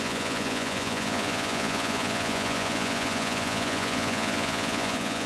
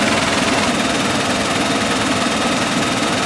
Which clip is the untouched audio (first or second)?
second